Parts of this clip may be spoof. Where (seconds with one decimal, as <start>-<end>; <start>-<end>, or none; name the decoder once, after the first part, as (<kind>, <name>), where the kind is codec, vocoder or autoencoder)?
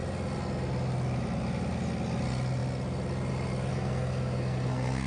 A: 3.7-5.1 (codec, SNAC)